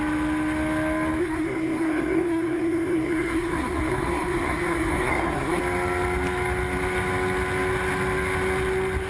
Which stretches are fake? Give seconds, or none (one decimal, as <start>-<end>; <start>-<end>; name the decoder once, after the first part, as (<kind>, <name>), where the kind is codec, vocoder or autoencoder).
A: 1.2-5.6 (codec, SNAC)